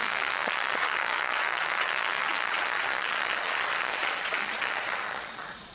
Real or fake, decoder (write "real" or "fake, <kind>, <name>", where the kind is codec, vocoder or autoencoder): fake, vocoder, Vocos